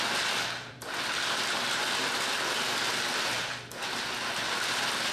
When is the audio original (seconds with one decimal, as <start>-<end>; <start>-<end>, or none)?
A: 0.0-0.7